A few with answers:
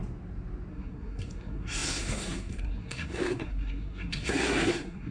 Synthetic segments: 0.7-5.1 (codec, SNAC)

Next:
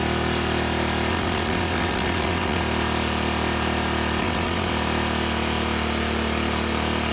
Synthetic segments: 1.1-2.6 (vocoder, WaveNeXt); 4.2-4.7

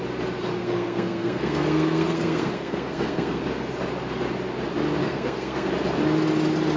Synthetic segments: 0.6-3.4 (codec, SNAC); 5.0-5.7

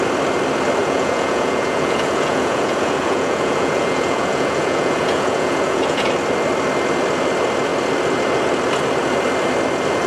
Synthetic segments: 0.8-6.1 (vocoder, Vocos)

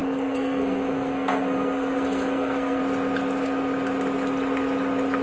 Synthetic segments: 0.0-2.8 (codec, SNAC)

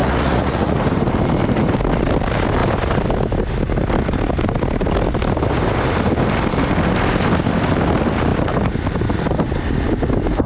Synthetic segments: 0.0-0.8 (vocoder, Vocos)

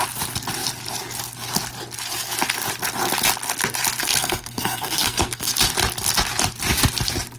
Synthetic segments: 4.0-5.5 (codec, SNAC)